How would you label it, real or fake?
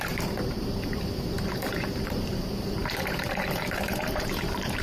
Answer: fake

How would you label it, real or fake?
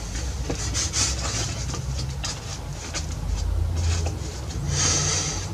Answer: real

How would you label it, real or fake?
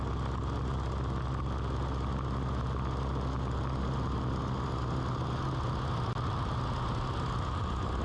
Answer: real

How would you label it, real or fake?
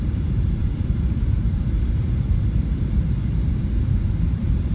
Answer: fake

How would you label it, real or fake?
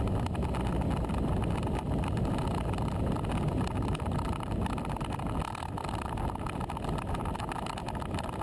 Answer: real